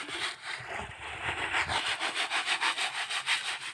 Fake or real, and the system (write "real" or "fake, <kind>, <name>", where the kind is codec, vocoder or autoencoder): real